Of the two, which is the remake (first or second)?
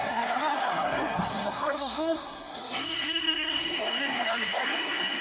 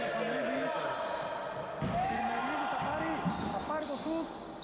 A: first